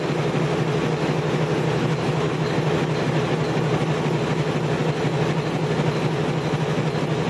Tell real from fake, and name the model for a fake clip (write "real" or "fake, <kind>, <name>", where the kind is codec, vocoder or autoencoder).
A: real